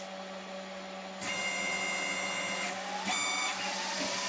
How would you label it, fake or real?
real